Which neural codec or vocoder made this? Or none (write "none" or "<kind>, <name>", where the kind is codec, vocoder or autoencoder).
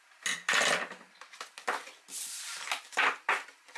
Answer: none